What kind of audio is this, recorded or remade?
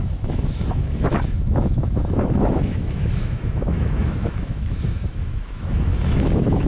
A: remade